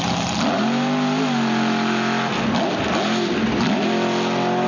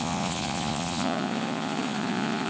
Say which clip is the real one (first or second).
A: first